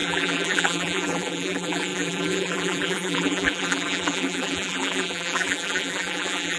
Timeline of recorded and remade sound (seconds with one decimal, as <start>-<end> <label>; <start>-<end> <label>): 0.0-6.6 remade